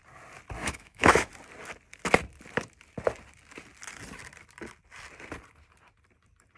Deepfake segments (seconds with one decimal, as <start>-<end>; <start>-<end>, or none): 0.6-1.3